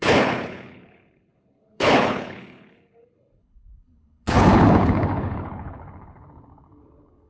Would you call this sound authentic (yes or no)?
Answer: no